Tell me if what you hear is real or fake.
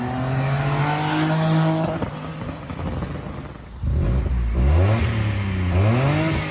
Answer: real